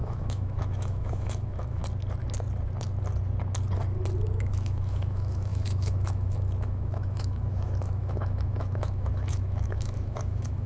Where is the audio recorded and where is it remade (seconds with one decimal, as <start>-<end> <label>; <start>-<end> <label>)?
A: 0.0-1.8 remade; 1.8-4.4 recorded; 4.4-10.7 remade